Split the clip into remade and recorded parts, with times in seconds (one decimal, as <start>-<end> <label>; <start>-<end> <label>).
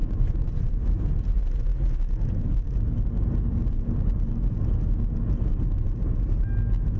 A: 0.0-0.7 remade; 0.7-7.0 recorded